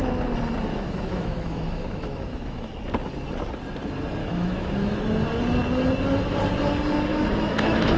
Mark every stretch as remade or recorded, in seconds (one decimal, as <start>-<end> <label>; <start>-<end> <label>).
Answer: 0.0-0.7 recorded; 0.7-2.7 remade; 2.7-4.2 recorded; 4.2-5.0 remade; 5.0-7.1 recorded; 7.1-8.0 remade